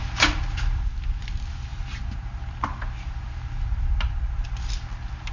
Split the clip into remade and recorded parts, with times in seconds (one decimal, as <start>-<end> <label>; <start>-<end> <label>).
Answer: 0.0-5.3 recorded